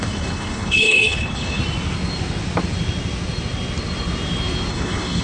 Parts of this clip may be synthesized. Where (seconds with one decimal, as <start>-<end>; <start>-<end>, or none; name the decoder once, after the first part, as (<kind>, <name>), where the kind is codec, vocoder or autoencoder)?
0.0-1.6 (codec, HILCodec); 4.7-5.2